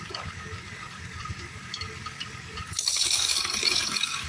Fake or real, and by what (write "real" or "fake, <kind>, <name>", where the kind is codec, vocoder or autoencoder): fake, codec, DAC